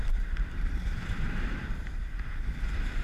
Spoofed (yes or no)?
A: yes